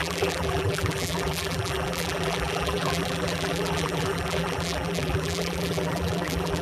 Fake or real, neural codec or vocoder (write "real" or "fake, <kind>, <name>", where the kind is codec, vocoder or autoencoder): fake, vocoder, BigVGAN v2